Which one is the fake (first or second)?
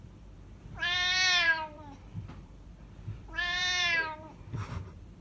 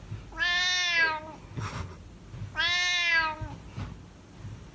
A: first